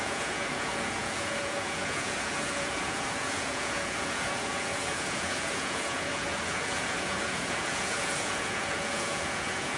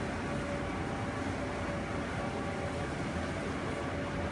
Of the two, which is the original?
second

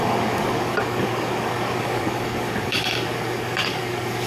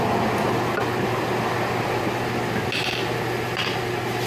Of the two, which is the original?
second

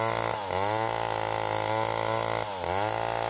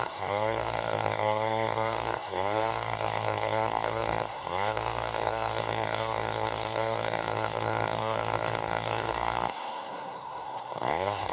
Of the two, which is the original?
first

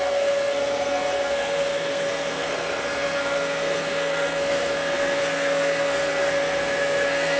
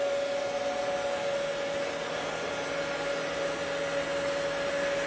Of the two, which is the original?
second